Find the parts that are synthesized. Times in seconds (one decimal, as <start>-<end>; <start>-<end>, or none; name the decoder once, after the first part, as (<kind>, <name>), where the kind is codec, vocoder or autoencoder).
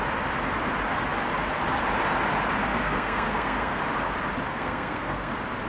2.7-3.8 (codec, SNAC); 4.5-5.3